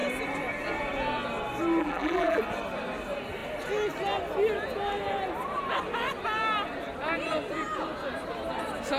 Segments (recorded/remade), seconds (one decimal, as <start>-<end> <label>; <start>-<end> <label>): 0.0-1.8 recorded; 1.8-2.4 remade; 2.4-9.0 recorded